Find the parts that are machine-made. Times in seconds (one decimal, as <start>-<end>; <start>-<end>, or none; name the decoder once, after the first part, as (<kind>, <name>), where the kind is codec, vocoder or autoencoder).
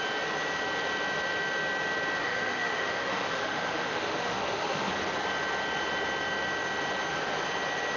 2.2-4.9 (autoencoder, DAC-VAE)